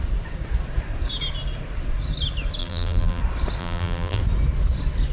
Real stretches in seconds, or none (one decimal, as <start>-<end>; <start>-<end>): 0.0-2.6; 3.2-3.6; 4.2-5.1

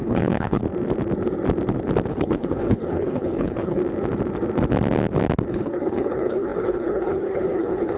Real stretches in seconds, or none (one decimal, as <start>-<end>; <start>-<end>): 0.6-2.1; 3.8-5.5